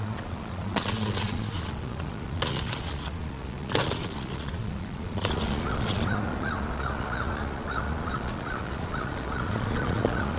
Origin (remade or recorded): remade